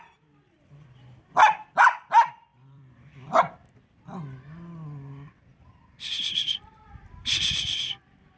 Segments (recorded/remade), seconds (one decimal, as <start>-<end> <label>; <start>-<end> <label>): 0.0-2.5 recorded; 2.5-3.4 remade; 3.4-5.5 recorded; 5.5-8.0 remade; 8.0-8.4 recorded